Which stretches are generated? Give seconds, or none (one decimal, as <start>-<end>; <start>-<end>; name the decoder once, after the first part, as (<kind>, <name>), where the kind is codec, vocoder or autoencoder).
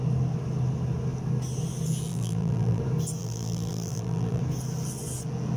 2.1-2.8 (vocoder, BigVGAN v2); 3.2-4.4